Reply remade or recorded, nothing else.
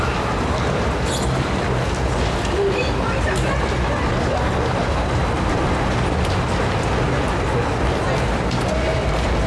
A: recorded